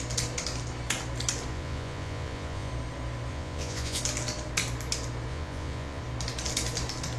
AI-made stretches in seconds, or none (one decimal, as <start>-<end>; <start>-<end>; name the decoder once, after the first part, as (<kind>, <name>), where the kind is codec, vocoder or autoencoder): 1.5-2.7 (vocoder, Vocos); 3.3-4.0; 5.3-6.0